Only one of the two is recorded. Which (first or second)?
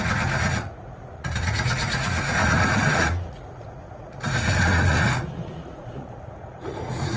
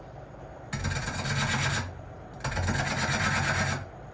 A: second